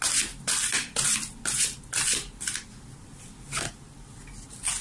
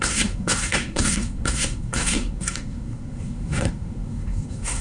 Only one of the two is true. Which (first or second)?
first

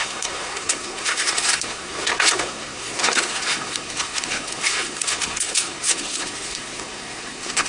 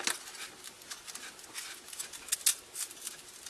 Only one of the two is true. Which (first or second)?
second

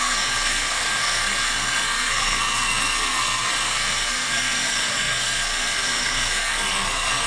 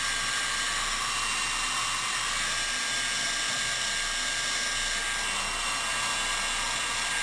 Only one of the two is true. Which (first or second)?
second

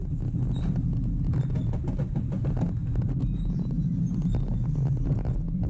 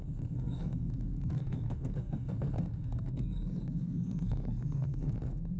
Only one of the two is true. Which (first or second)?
first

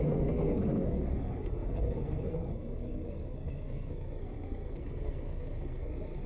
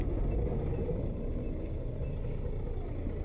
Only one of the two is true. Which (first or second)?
second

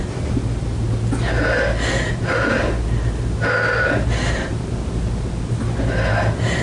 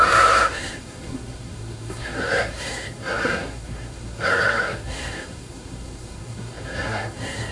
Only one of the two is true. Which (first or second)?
first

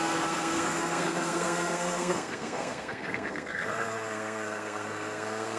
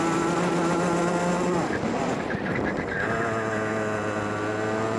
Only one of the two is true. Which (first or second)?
second